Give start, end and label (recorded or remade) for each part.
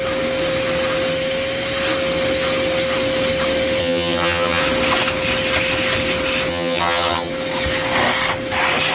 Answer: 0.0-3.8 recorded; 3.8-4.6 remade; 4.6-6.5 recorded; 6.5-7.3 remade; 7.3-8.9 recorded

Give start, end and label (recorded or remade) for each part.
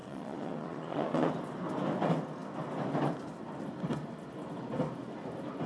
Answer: 0.0-1.3 remade; 1.3-5.7 recorded